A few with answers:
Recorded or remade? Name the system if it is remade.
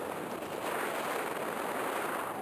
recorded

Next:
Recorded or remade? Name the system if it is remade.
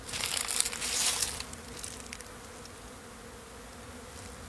recorded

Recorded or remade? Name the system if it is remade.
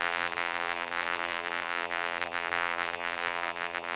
remade, vocoder, BigVGAN v2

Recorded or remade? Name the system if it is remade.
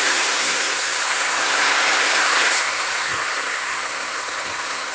remade, codec, SNAC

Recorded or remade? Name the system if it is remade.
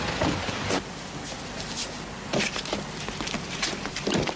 recorded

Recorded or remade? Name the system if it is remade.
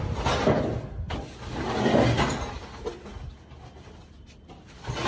recorded